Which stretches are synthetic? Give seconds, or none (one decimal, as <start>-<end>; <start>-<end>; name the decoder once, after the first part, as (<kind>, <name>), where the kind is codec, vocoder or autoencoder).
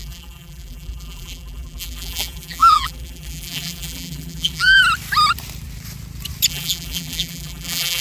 0.0-4.8 (vocoder, BigVGAN v2); 6.5-8.0